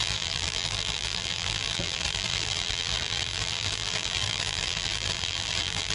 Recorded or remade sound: remade